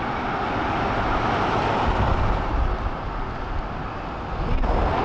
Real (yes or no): yes